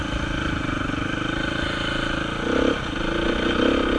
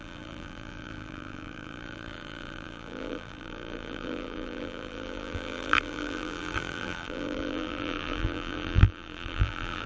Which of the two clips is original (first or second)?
first